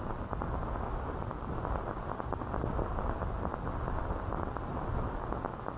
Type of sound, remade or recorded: recorded